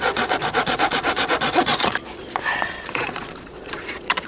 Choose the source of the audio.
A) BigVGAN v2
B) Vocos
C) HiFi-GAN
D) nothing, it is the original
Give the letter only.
B